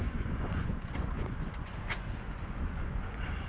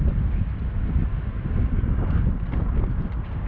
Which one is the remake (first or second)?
first